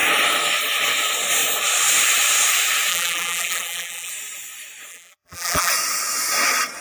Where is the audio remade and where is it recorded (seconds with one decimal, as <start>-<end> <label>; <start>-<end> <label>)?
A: 0.0-2.9 recorded; 2.9-4.1 remade; 4.1-4.9 recorded; 4.9-5.7 remade; 5.7-6.8 recorded